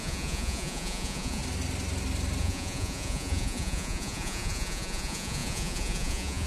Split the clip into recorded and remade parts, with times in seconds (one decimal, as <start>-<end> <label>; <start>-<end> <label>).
0.0-1.4 remade; 1.4-2.4 recorded; 2.4-6.5 remade